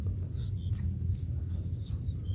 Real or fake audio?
real